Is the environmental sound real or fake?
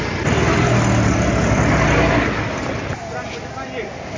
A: real